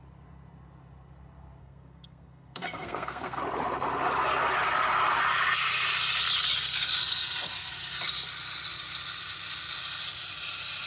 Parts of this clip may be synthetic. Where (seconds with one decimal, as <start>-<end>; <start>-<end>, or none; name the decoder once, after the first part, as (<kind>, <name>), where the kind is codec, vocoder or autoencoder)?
1.6-3.4 (codec, SNAC)